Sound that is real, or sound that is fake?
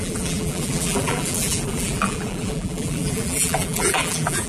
fake